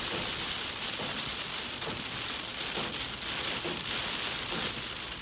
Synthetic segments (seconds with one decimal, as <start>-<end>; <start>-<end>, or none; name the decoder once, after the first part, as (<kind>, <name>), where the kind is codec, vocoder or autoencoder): none